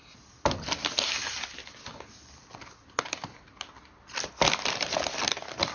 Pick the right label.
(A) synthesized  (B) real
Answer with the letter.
B